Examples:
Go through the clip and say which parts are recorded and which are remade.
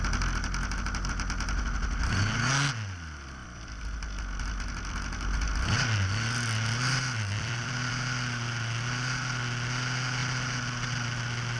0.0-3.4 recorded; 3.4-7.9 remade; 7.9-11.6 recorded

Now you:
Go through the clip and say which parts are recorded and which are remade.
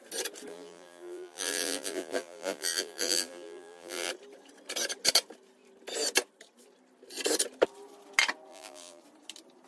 0.0-0.5 recorded; 0.5-4.1 remade; 4.1-8.5 recorded; 8.5-9.0 remade; 9.0-9.7 recorded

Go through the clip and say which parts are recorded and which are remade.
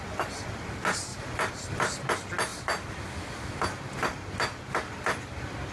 0.0-5.7 recorded